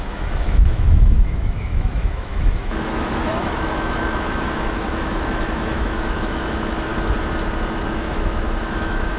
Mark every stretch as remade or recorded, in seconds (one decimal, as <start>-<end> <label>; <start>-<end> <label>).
0.0-6.9 remade; 6.9-7.9 recorded; 7.9-9.2 remade